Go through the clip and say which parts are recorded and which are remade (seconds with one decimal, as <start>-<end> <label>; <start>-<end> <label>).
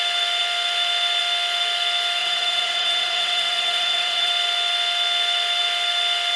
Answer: 0.0-2.2 recorded; 2.2-4.3 remade; 4.3-6.4 recorded